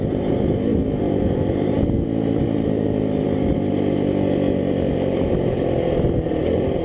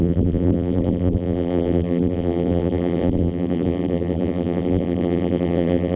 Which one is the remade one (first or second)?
second